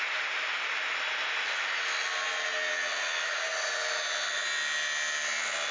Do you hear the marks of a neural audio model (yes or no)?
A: no